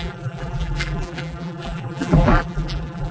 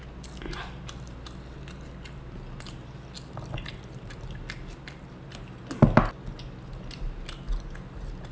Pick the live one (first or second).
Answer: second